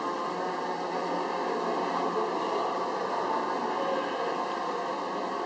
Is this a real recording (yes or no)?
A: yes